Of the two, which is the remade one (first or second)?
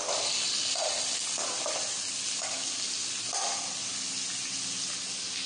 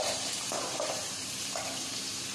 second